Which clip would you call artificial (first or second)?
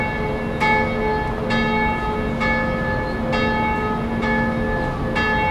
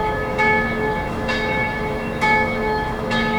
second